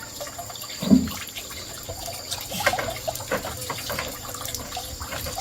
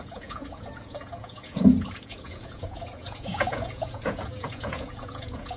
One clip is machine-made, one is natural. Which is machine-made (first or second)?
second